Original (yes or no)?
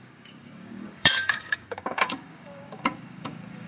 no